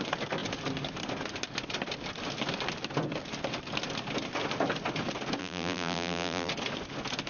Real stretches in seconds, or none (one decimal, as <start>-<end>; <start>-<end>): 0.0-5.4; 6.5-7.3